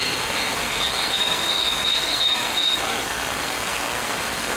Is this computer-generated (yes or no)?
yes